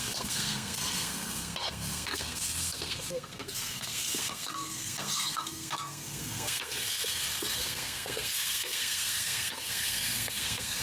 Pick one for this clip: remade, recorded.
remade